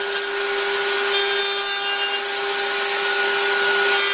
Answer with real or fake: real